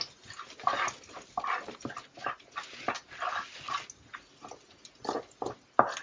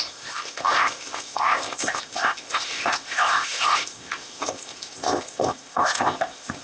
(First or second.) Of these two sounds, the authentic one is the first